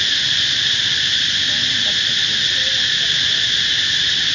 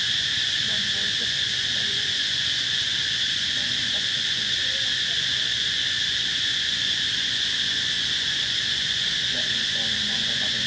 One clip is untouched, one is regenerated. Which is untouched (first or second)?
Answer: first